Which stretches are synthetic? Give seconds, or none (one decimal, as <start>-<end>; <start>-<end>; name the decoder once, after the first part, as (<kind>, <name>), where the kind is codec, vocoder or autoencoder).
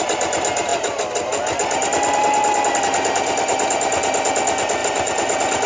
none